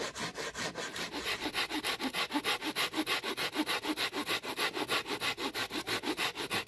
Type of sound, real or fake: real